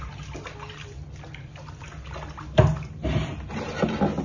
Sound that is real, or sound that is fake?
real